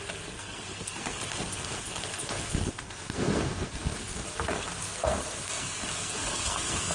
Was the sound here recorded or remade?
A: remade